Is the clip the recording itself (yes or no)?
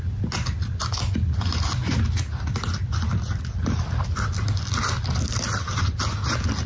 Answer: yes